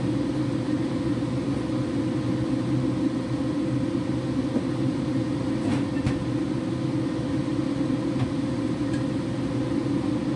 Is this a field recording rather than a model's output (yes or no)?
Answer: yes